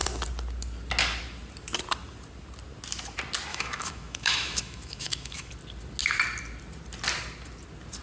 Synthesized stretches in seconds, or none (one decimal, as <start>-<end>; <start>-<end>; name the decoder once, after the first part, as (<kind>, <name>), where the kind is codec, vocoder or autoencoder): 3.5-5.5 (autoencoder, DAC-VAE)